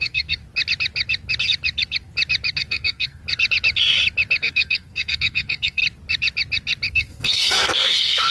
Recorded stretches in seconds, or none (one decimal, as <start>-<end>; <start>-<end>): 0.4-2.5; 3.2-4.4; 5.8-6.9